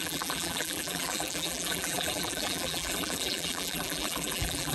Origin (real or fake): fake